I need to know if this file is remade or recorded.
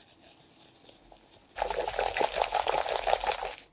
recorded